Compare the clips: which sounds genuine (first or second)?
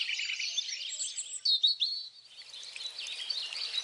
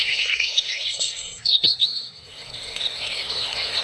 first